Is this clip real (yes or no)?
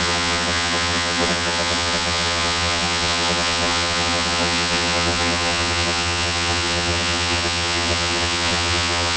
no